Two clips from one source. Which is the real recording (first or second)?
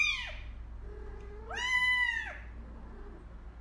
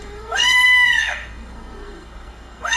first